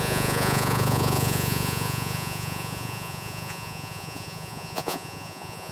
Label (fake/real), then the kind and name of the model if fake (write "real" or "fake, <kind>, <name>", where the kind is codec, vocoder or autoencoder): fake, vocoder, Vocos